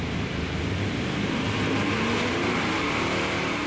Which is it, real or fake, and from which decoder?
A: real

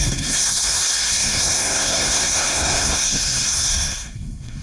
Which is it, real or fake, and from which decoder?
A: fake, codec, SNAC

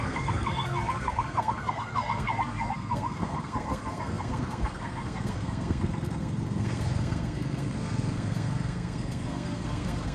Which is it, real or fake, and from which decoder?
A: fake, codec, SNAC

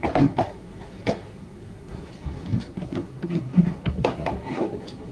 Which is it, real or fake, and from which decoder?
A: fake, codec, SNAC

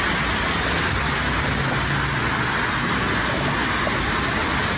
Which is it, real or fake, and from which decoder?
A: real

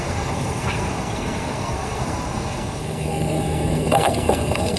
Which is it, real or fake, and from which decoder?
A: fake, codec, SNAC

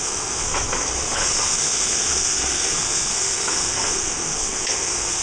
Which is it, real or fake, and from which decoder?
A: fake, codec, SNAC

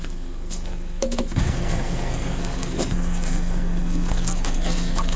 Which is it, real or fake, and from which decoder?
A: fake, codec, SNAC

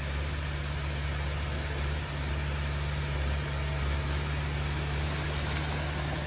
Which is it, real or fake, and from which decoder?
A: real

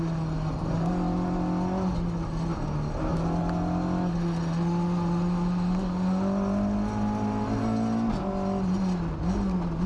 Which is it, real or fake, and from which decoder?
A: real